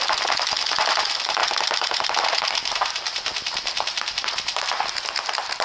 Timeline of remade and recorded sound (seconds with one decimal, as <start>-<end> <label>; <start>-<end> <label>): 0.0-1.4 recorded; 1.4-4.8 remade; 4.8-5.6 recorded

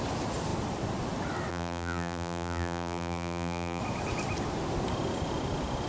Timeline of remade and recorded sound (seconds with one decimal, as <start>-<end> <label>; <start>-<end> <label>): 0.0-1.5 recorded; 1.5-3.8 remade; 3.8-5.9 recorded

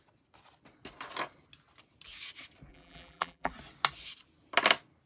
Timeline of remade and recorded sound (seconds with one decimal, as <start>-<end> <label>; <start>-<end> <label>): 0.0-2.7 recorded; 2.7-3.5 remade; 3.5-5.1 recorded

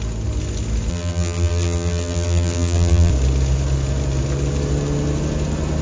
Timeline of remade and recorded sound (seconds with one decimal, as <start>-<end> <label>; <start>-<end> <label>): 0.0-0.9 recorded; 0.9-3.1 remade; 3.1-5.8 recorded

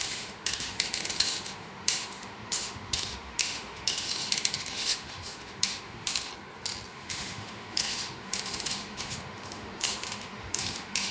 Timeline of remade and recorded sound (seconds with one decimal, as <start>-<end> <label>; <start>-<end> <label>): 0.0-6.3 remade; 6.3-6.9 recorded; 6.9-11.1 remade

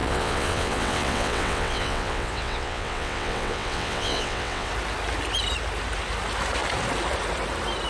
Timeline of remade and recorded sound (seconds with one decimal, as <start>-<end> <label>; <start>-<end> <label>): 0.0-4.7 remade; 4.7-7.9 recorded

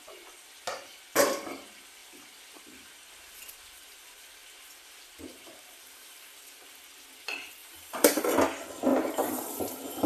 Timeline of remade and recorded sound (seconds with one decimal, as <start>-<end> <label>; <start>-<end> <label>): 0.0-5.3 recorded; 5.3-6.4 remade; 6.4-7.6 recorded; 7.6-8.2 remade; 8.2-8.9 recorded; 8.9-9.5 remade; 9.5-10.1 recorded